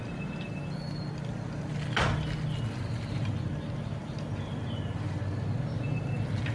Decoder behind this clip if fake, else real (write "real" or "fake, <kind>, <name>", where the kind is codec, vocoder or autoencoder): real